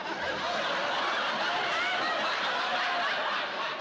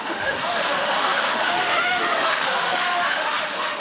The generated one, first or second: second